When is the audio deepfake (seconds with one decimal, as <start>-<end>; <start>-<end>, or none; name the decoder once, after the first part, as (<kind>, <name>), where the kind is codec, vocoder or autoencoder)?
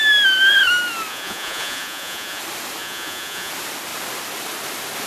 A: 1.1-2.4 (vocoder, Vocos); 2.8-3.5